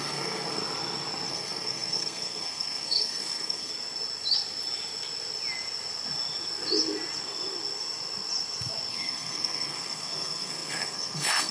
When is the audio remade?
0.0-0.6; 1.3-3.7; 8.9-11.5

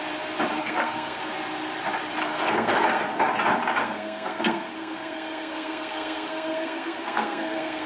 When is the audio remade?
0.6-1.2; 2.2-3.0; 3.8-7.9

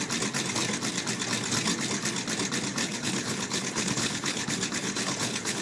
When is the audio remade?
2.8-5.6

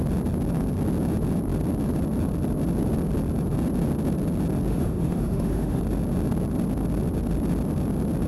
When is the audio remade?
4.7-5.8